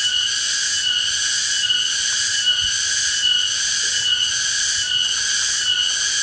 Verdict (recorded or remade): recorded